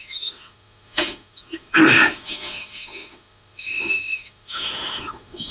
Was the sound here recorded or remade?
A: remade